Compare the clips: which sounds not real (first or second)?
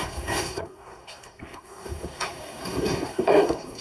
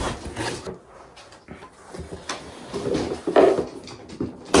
first